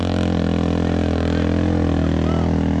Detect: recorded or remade recorded